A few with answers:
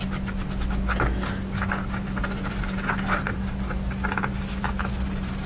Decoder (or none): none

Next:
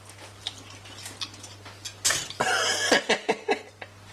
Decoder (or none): none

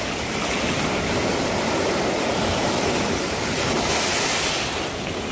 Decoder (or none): none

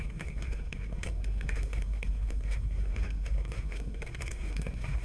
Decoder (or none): codec, SNAC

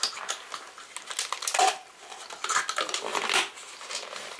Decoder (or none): none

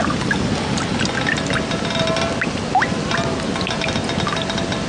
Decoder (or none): none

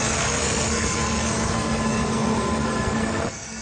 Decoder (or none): codec, SNAC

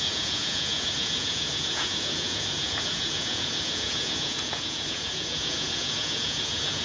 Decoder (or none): vocoder, Vocos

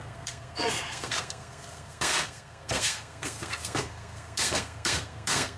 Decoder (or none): codec, SNAC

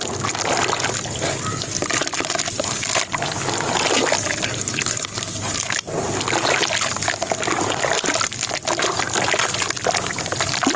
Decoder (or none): none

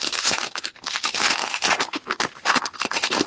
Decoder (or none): autoencoder, DAC-VAE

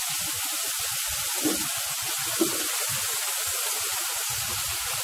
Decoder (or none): none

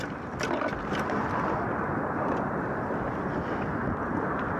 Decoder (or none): none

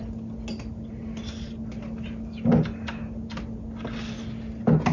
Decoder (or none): none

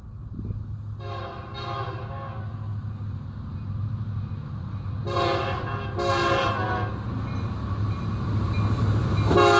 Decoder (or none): none